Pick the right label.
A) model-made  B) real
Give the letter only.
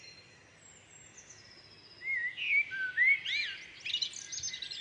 B